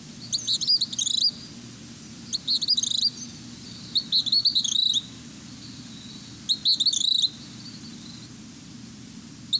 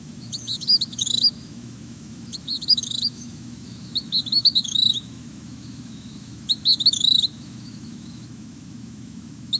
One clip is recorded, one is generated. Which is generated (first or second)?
second